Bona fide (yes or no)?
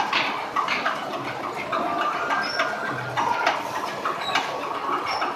yes